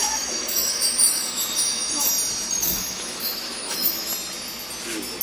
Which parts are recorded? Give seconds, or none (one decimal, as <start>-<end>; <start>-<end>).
2.1-2.6; 4.1-5.2